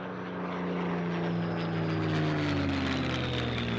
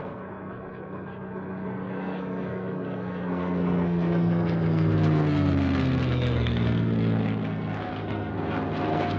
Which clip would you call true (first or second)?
first